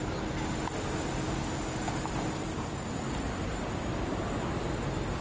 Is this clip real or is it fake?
real